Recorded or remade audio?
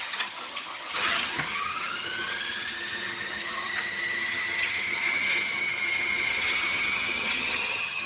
remade